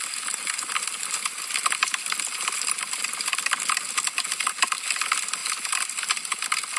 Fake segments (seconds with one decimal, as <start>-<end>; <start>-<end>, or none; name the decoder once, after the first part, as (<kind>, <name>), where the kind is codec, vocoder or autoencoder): none